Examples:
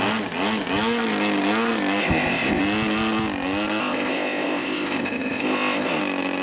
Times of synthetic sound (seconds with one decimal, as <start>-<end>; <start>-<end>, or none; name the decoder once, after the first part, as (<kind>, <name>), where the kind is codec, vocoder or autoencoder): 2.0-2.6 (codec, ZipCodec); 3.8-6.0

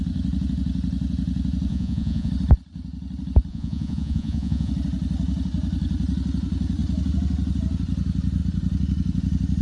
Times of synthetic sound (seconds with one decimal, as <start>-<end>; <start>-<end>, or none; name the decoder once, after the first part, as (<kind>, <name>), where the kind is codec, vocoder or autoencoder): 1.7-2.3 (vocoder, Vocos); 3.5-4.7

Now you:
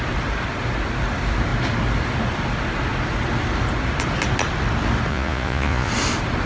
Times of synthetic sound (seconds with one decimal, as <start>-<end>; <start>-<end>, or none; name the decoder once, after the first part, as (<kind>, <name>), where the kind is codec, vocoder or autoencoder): 5.1-5.9 (vocoder, Vocos)

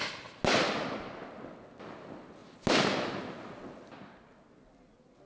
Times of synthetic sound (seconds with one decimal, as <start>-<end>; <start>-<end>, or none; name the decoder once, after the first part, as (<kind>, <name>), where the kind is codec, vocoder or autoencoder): none

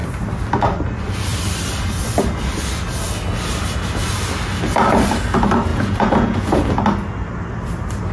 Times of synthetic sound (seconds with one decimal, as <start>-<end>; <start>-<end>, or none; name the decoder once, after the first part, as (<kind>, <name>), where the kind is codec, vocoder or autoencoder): 5.7-6.7 (vocoder, Vocos)

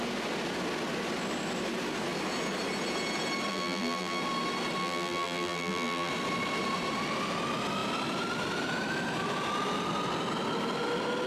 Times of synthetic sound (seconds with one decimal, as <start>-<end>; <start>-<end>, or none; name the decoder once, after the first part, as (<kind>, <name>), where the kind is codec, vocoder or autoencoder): 3.5-4.2 (vocoder, BigVGAN v2); 4.8-6.1

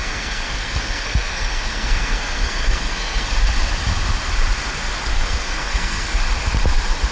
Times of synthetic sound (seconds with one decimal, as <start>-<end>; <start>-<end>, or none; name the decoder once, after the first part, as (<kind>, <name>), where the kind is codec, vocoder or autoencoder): 0.0-3.3 (codec, SNAC); 5.1-6.2